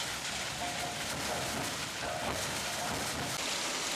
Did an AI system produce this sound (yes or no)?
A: no